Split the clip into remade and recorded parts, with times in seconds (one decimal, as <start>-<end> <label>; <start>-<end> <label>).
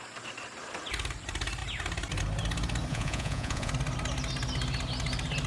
0.0-2.9 recorded; 2.9-3.7 remade; 3.7-5.5 recorded